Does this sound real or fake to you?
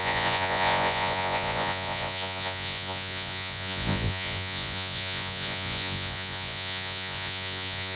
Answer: fake